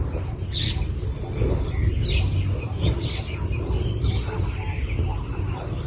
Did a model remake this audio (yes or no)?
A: no